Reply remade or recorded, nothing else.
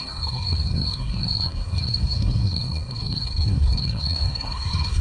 remade